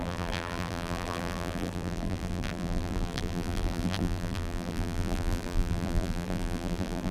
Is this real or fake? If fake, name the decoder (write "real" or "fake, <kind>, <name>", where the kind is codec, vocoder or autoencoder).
fake, vocoder, BigVGAN v2